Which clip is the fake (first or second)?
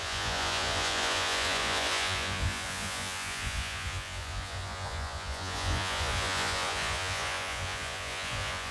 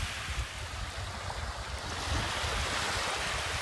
first